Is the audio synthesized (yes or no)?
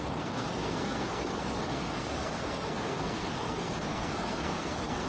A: yes